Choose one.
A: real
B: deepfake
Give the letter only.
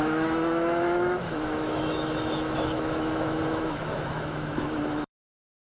B